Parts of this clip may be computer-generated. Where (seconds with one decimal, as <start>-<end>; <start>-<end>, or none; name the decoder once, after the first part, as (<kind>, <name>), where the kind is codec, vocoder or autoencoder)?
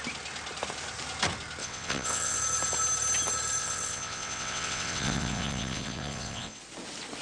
1.6-2.4 (vocoder, WaveNeXt); 3.6-6.6